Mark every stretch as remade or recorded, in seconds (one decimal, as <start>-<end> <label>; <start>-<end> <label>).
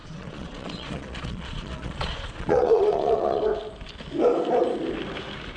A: 0.0-3.4 remade; 3.4-5.6 recorded